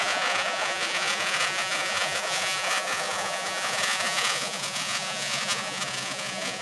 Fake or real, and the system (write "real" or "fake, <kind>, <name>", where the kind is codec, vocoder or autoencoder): fake, vocoder, Vocos